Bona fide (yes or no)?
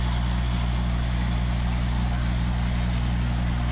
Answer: yes